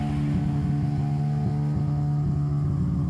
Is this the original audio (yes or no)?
yes